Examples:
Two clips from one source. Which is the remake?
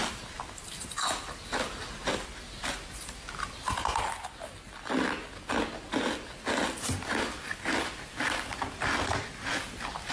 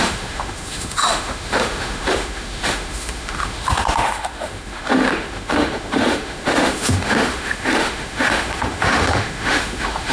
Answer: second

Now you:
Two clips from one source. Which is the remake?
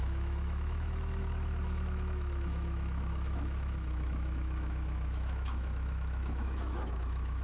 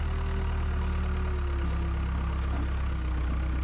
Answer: first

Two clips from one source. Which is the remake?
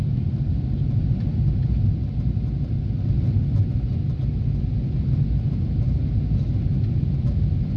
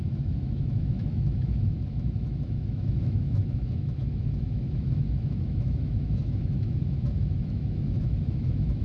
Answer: second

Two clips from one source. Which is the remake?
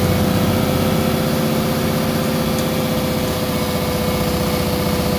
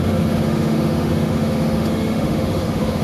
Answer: second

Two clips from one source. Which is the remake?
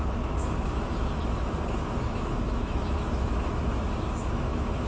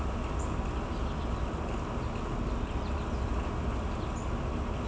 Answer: first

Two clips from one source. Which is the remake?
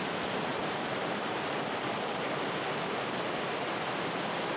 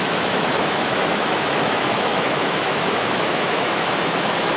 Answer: second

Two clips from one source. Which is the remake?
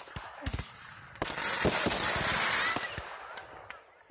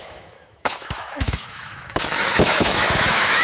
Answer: second